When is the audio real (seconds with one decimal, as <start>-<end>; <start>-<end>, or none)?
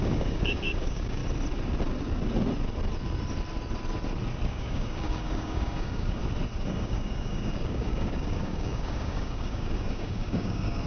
1.2-4.5; 6.2-6.7